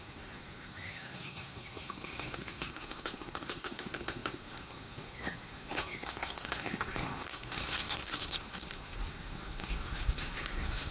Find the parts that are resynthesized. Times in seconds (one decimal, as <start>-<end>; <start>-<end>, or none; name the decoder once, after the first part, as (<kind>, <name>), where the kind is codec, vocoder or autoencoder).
0.0-10.9 (codec, SNAC)